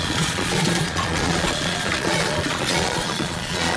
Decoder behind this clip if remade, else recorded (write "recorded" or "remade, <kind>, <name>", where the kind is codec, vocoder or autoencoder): remade, vocoder, Vocos